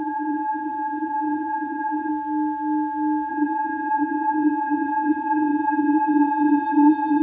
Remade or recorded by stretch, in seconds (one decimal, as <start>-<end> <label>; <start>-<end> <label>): 0.0-2.1 remade; 2.1-3.3 recorded; 3.3-7.2 remade